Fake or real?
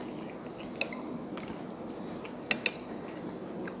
real